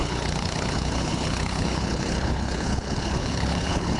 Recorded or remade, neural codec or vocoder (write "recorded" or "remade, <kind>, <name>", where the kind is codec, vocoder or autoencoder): remade, codec, HILCodec